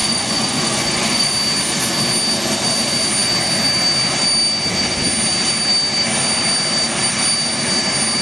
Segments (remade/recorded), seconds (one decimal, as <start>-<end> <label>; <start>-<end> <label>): 0.0-1.3 remade; 1.3-8.2 recorded